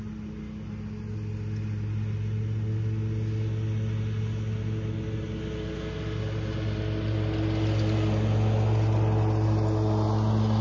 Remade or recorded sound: recorded